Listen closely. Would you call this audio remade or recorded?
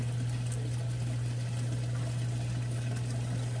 recorded